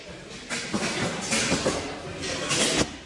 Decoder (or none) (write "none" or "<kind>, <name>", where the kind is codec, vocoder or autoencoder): none